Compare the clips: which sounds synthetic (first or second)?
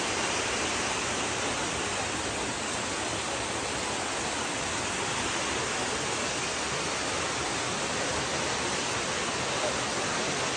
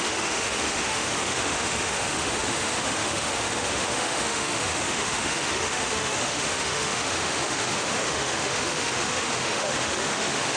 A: second